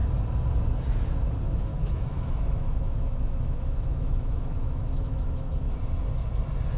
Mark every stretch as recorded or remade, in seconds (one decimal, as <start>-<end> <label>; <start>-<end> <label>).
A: 0.0-1.7 recorded; 1.7-5.8 remade; 5.8-6.8 recorded